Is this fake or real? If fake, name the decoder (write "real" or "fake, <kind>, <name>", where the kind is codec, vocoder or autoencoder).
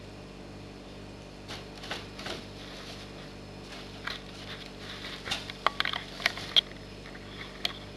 real